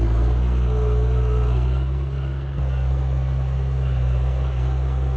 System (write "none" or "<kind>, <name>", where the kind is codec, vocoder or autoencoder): codec, SNAC